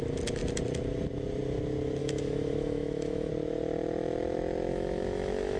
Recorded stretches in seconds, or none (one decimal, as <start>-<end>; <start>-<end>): 0.0-2.0; 3.3-4.7